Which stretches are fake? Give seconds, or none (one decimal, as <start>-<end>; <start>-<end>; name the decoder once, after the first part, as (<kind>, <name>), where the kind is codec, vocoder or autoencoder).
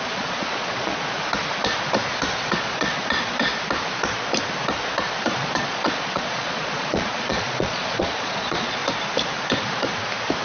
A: 0.0-1.2 (vocoder, Vocos); 2.6-3.5; 5.2-8.8